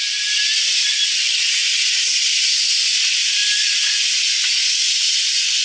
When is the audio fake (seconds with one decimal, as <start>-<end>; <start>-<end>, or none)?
none